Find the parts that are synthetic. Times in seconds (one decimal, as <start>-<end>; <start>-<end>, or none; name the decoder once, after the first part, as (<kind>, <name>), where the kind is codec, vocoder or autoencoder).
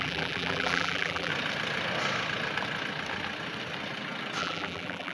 0.0-1.3 (vocoder, BigVGAN v2); 4.4-5.1